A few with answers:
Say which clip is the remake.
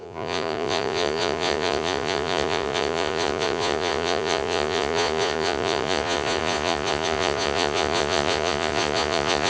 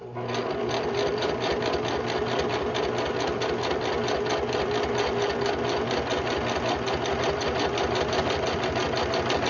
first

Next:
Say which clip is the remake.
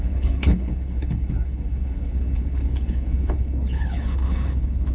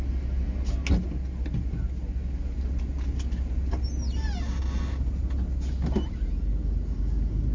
first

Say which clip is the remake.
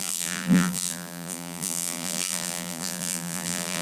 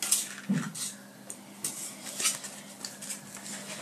first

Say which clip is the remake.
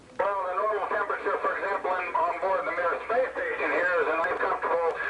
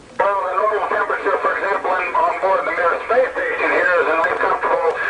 second